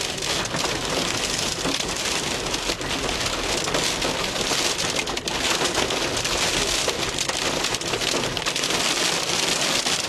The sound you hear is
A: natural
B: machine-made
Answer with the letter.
A